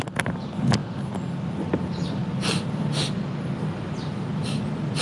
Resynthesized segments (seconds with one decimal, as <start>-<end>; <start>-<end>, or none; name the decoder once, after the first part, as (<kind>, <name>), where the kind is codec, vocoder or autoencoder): none